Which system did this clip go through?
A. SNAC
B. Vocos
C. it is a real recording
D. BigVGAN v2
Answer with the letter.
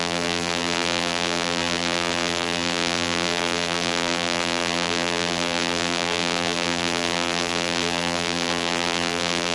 D